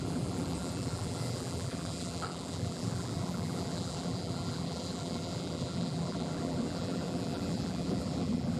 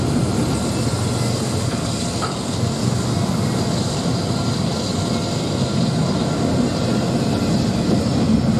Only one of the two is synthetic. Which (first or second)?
first